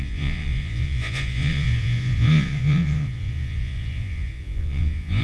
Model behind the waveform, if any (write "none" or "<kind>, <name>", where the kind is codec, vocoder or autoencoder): vocoder, Vocos